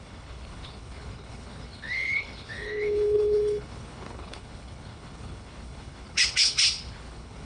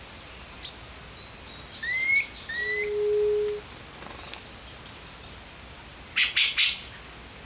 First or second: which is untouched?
second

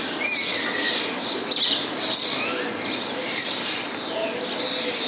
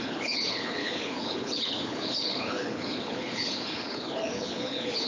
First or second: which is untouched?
first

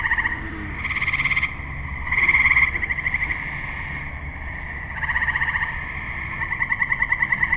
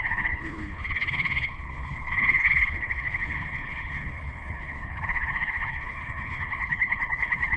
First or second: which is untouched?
first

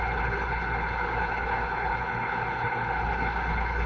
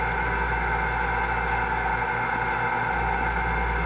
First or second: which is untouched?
second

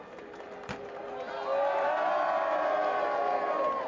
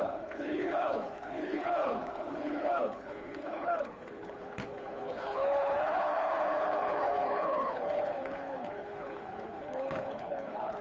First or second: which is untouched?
first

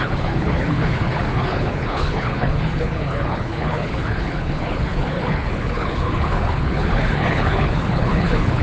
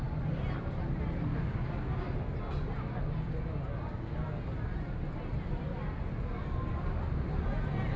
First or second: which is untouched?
second